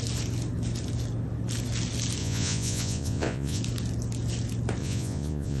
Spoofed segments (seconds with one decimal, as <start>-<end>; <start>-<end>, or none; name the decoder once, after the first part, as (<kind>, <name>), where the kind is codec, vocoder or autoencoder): 2.2-3.6 (vocoder, Vocos); 4.8-5.6